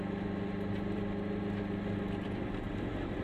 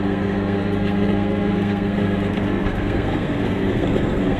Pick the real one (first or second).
first